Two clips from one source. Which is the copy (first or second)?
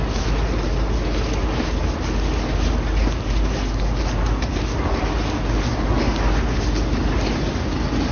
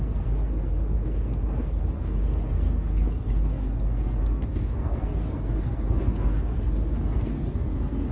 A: second